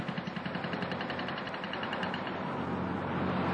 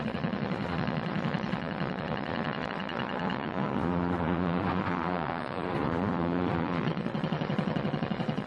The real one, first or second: first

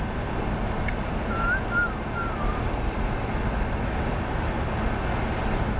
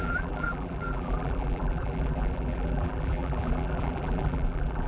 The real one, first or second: first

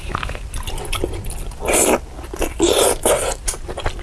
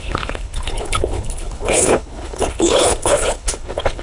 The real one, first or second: first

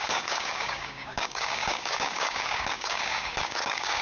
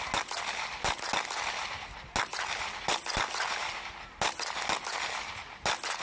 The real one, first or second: second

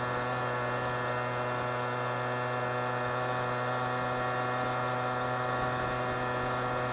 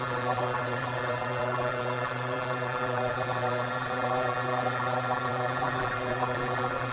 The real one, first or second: first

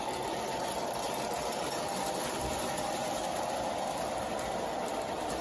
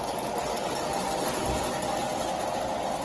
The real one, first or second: second